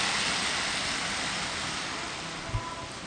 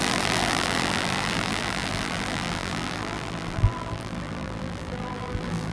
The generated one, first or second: second